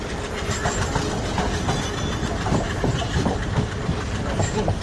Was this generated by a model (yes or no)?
no